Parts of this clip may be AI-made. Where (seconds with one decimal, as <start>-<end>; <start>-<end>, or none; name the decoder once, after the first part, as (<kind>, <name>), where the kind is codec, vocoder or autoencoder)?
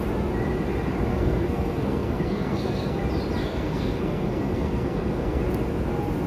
1.1-3.0 (codec, SNAC); 3.4-5.4